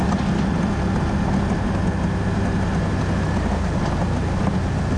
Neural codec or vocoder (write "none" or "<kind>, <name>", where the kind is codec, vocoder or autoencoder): none